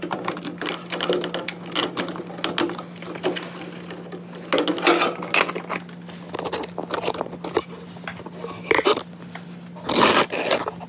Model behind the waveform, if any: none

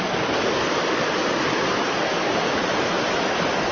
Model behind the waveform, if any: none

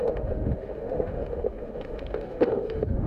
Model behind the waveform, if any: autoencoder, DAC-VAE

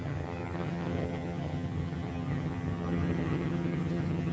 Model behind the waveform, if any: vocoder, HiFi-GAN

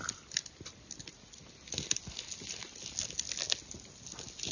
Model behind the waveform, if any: none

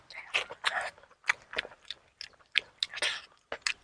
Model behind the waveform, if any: none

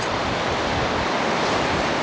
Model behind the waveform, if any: none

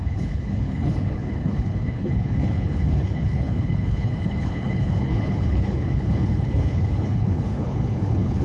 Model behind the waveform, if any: codec, HILCodec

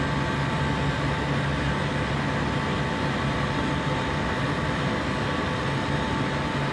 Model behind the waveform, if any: none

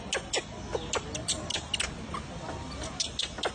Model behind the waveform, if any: none